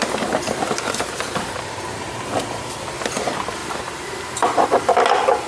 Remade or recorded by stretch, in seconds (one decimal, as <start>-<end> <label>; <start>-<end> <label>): 0.0-2.4 remade; 2.4-3.6 recorded; 3.6-4.1 remade; 4.1-5.5 recorded